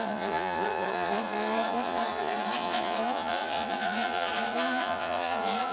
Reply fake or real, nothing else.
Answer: fake